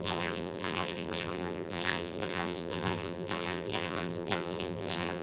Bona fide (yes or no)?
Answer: no